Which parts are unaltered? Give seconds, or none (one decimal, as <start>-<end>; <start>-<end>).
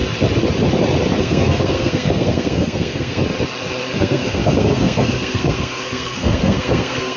0.0-1.2; 3.2-4.0